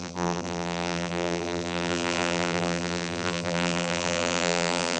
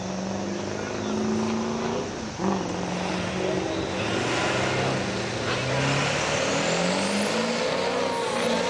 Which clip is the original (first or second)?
second